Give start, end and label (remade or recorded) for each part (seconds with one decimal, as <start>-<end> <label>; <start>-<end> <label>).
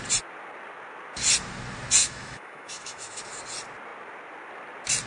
0.0-2.0 recorded; 2.0-3.2 remade; 3.2-5.1 recorded